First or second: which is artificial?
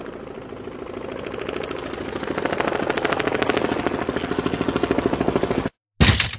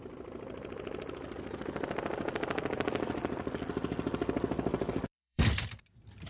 second